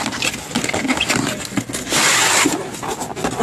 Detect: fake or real real